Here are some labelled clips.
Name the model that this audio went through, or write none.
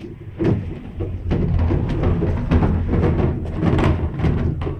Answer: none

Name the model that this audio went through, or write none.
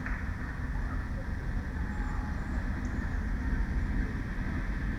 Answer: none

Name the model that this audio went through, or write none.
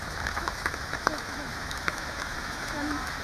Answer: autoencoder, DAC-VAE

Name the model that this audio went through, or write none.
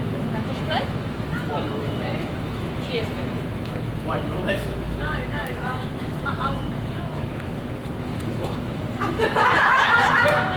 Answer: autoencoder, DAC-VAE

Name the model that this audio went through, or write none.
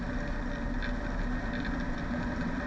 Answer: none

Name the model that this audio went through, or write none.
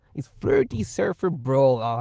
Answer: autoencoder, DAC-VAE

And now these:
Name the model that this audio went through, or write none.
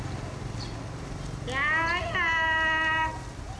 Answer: none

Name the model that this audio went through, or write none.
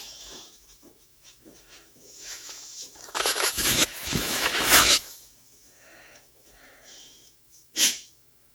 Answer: autoencoder, DAC-VAE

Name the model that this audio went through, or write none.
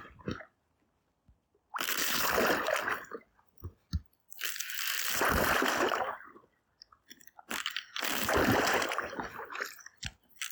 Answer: none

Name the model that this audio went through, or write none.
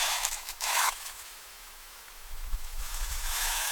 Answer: autoencoder, DAC-VAE